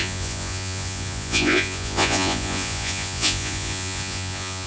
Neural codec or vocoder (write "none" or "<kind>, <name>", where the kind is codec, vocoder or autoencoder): vocoder, Vocos